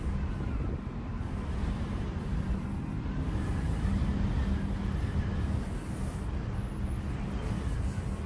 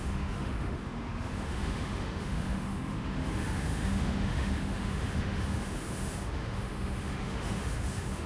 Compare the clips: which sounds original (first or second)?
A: first